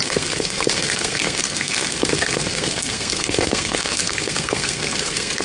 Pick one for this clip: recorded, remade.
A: remade